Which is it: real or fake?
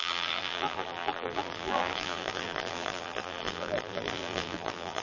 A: fake